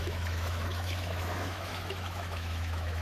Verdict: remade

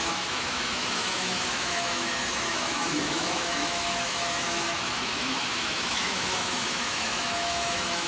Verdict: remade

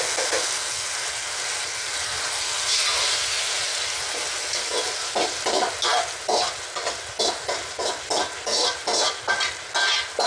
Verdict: recorded